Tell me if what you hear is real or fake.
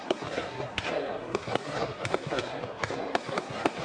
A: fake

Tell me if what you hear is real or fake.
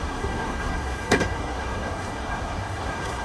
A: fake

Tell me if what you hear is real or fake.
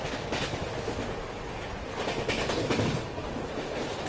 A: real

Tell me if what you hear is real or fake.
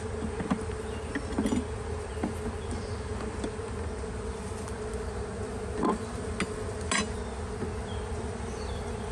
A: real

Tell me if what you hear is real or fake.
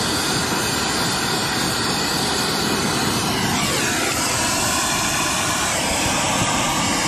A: real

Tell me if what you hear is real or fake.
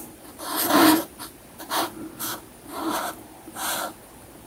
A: fake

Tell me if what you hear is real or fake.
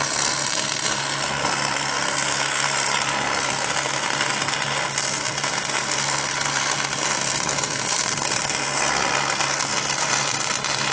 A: real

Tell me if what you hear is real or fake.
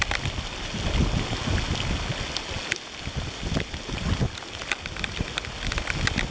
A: real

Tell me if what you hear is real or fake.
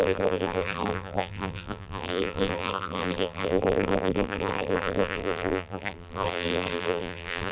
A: fake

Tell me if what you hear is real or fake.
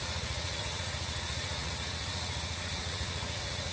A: fake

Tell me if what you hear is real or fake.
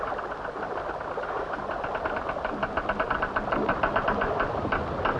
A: real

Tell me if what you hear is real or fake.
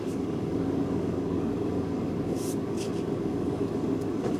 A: fake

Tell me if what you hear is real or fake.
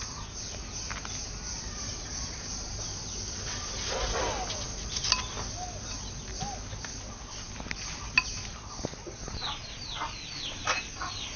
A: real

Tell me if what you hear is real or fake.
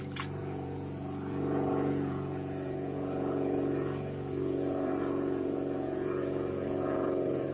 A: fake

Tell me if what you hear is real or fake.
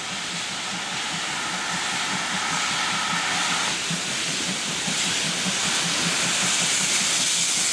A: real